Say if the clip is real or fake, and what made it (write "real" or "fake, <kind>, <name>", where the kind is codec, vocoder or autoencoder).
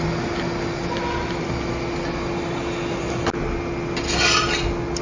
real